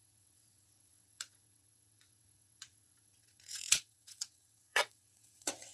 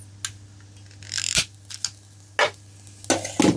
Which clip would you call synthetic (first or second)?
first